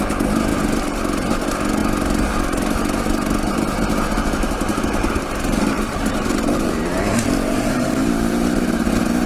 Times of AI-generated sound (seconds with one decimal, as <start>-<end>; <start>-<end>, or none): 0.5-1.0; 4.7-8.9